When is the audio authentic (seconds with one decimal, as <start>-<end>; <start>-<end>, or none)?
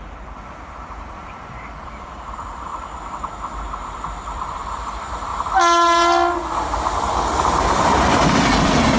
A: 5.3-8.6